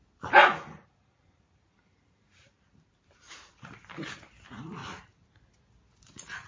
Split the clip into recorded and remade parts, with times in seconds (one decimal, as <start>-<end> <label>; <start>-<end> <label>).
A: 0.0-0.4 recorded; 0.4-4.3 remade; 4.3-6.5 recorded